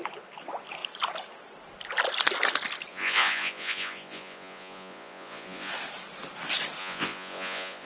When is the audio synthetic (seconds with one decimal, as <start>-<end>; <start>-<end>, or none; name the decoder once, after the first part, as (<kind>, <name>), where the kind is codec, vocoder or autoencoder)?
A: 2.9-5.7 (vocoder, Vocos); 6.8-7.9

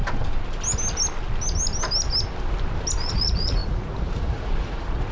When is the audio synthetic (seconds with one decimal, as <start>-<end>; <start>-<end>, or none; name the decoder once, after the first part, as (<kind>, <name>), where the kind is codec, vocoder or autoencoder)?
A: 3.1-5.1 (vocoder, Vocos)